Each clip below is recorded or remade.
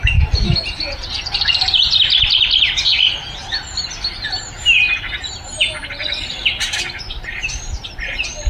recorded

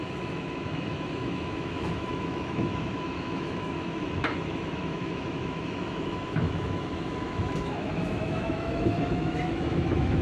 remade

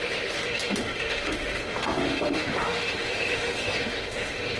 remade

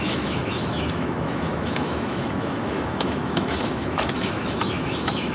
remade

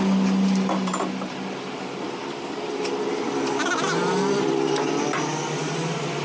recorded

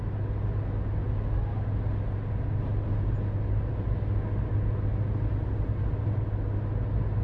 recorded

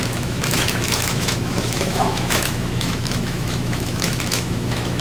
remade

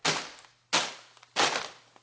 recorded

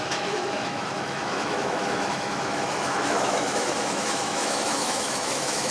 remade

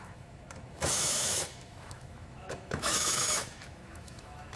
remade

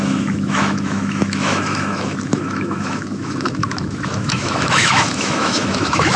remade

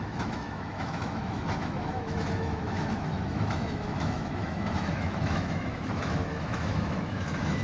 remade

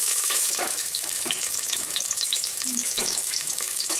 remade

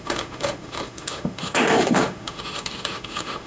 remade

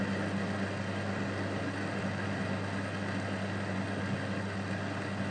recorded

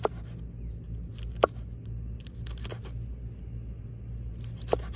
recorded